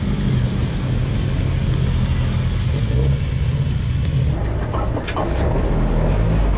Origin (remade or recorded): recorded